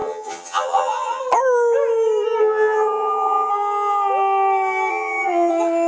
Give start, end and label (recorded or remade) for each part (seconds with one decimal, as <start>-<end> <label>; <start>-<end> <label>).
0.0-1.2 remade; 1.2-2.4 recorded; 2.4-3.5 remade; 3.5-4.9 recorded; 4.9-5.5 remade; 5.5-5.9 recorded